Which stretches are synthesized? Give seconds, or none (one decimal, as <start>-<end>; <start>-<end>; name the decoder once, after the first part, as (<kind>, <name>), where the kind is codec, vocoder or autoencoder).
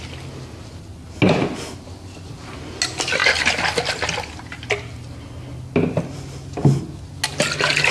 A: none